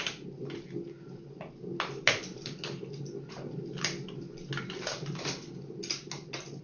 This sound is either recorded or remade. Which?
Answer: recorded